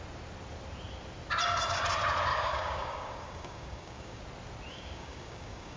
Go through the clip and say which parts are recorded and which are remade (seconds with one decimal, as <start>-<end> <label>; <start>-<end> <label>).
0.0-2.3 recorded; 2.3-4.2 remade; 4.2-4.7 recorded; 4.7-5.8 remade